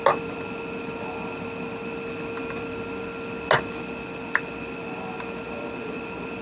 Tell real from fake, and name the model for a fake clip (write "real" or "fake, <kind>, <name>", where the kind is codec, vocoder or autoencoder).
real